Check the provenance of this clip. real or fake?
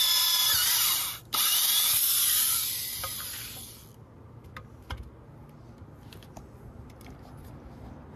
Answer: real